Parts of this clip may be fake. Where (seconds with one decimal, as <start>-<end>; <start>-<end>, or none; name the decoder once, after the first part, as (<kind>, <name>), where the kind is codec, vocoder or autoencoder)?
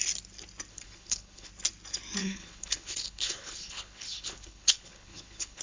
0.7-1.5 (codec, HILCodec); 2.2-5.6